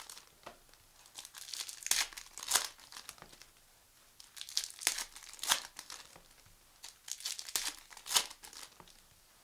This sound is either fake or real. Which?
real